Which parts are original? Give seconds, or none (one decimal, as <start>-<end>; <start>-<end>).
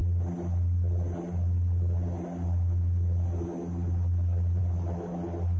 0.0-5.6